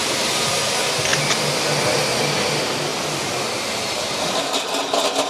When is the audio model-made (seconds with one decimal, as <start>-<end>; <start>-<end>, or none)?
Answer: 0.0-0.6; 2.9-4.3